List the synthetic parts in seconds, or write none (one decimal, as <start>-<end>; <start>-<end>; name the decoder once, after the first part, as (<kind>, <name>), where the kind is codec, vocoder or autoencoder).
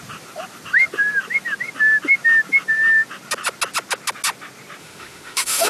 4.8-5.7 (autoencoder, DAC-VAE)